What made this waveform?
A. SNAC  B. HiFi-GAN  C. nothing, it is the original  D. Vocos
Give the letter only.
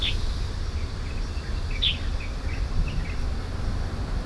C